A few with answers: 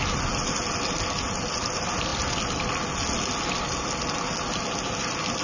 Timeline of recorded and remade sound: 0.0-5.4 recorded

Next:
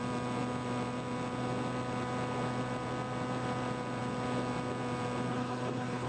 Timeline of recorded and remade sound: 0.0-5.3 recorded; 5.3-6.1 remade

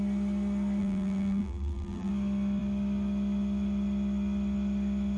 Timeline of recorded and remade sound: 0.0-0.8 recorded; 0.8-2.1 remade; 2.1-5.2 recorded

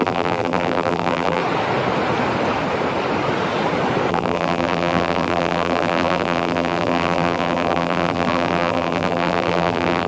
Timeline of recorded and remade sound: 0.0-1.4 remade; 1.4-4.1 recorded; 4.1-10.1 remade